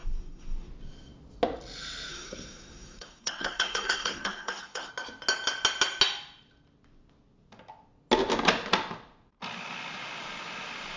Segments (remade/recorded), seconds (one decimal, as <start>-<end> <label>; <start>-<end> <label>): 0.0-0.7 remade; 0.7-2.1 recorded; 2.1-4.9 remade; 4.9-11.0 recorded